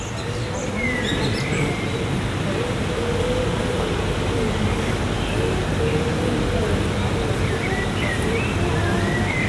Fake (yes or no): no